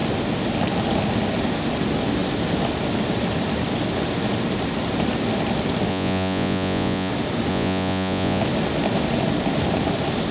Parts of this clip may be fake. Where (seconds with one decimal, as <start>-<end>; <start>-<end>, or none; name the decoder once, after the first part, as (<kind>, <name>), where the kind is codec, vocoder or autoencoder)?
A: 5.9-7.1 (vocoder, Vocos); 7.5-8.4